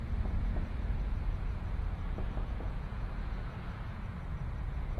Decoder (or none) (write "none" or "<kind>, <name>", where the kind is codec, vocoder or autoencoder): vocoder, Vocos